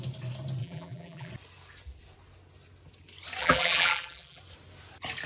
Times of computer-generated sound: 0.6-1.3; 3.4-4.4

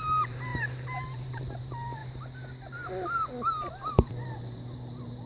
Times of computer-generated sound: 0.0-2.0; 3.7-5.3